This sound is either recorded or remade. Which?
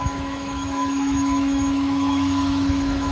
remade